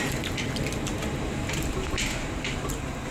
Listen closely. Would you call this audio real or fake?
fake